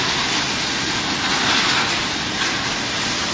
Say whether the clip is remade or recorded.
recorded